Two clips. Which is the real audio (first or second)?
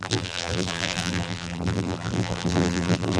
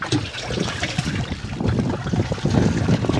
second